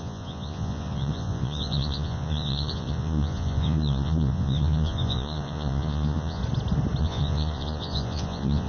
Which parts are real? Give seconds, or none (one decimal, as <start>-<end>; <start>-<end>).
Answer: 6.4-7.0